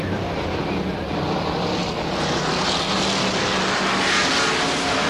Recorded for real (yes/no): yes